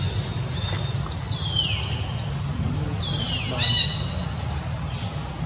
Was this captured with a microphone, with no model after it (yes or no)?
yes